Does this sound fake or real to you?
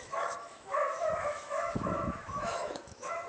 fake